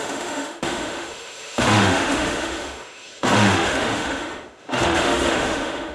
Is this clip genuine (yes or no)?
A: no